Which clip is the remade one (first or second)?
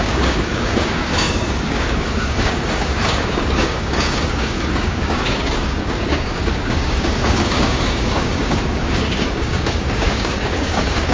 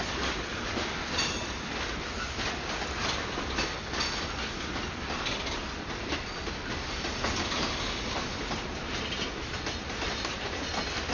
first